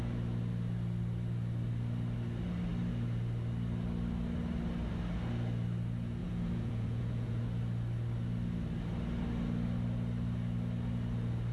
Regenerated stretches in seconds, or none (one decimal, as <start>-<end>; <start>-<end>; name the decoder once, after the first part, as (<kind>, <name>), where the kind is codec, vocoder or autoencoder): 6.2-7.4 (vocoder, Vocos)